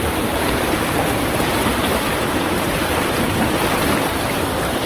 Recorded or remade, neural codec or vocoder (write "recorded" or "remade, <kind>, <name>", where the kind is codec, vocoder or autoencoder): remade, vocoder, BigVGAN v2